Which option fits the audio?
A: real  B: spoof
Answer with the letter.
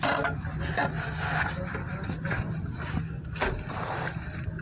A